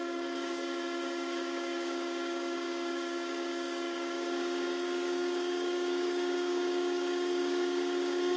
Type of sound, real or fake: fake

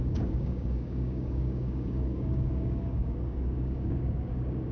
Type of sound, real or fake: fake